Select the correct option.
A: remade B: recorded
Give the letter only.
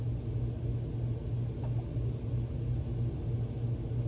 B